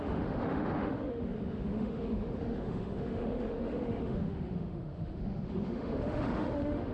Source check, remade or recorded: remade